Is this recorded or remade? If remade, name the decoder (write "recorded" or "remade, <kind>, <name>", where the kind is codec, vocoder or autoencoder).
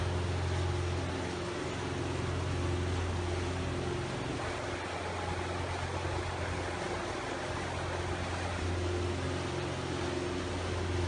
recorded